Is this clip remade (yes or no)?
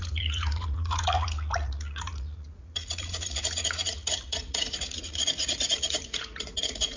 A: yes